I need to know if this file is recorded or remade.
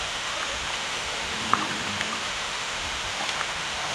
remade